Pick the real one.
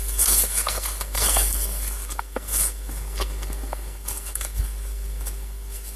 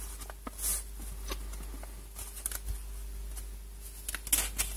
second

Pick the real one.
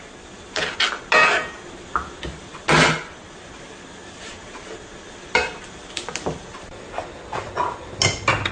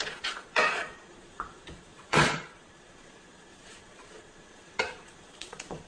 first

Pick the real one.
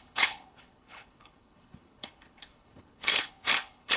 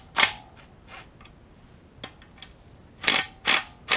second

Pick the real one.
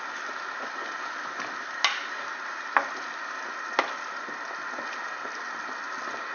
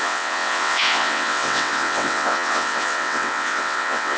first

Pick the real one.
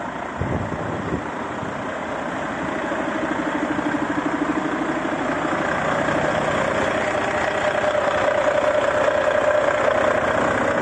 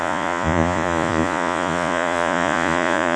first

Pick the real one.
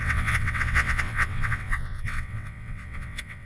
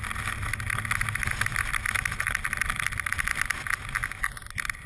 second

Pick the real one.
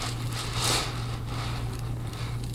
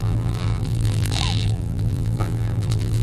first